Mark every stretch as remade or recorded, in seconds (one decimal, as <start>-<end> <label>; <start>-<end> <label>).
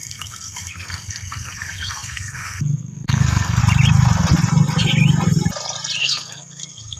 0.0-3.6 remade; 3.6-6.0 recorded; 6.0-7.0 remade